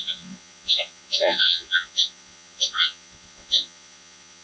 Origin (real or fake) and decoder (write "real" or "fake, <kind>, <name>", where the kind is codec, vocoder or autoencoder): fake, vocoder, Vocos